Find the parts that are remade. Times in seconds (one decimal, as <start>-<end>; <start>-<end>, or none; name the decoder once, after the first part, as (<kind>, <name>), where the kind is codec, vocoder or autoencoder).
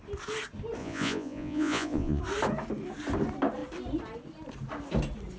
0.8-2.2 (vocoder, Vocos)